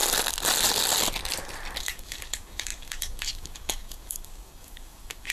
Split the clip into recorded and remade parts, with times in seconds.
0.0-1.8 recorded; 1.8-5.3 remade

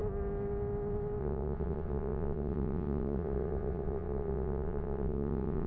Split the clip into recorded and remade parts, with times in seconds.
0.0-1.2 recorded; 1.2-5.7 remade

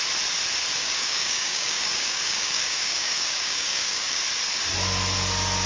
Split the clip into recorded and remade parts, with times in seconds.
0.0-0.8 recorded; 0.8-4.2 remade; 4.2-5.7 recorded

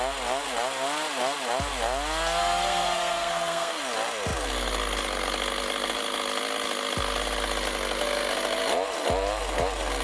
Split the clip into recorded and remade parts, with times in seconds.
0.0-2.4 recorded; 2.4-3.8 remade; 3.8-10.0 recorded

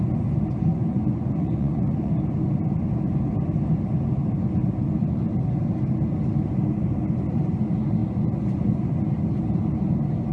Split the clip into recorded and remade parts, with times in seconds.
0.0-0.7 recorded; 0.7-2.1 remade; 2.1-10.3 recorded